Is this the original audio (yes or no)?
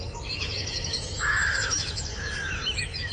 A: no